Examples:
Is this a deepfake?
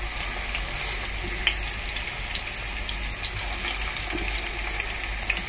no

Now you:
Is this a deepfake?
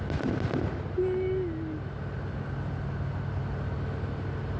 no